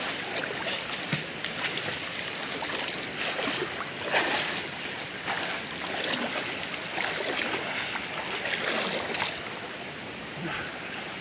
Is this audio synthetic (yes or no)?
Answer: no